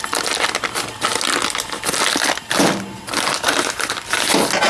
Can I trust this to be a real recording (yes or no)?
yes